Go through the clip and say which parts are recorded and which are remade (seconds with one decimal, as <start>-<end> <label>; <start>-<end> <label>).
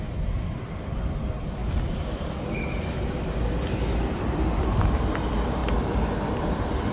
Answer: 0.0-5.6 remade; 5.6-6.3 recorded; 6.3-6.9 remade